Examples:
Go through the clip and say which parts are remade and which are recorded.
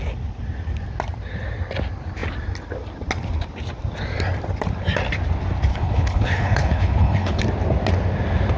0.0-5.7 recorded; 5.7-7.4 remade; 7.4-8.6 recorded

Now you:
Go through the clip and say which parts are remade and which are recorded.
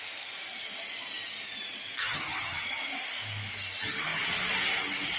0.0-2.0 recorded; 2.0-2.8 remade; 2.8-5.2 recorded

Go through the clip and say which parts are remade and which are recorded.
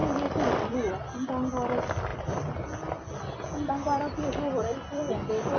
0.0-5.6 recorded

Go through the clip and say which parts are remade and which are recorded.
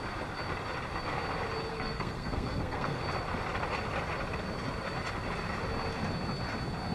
0.0-1.7 recorded; 1.7-3.0 remade; 3.0-6.9 recorded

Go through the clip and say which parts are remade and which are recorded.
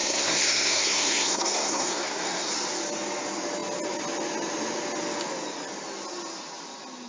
0.0-2.5 remade; 2.5-7.1 recorded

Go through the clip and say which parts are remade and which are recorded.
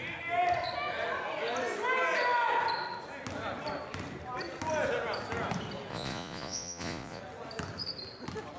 0.0-5.9 recorded; 5.9-7.2 remade; 7.2-8.6 recorded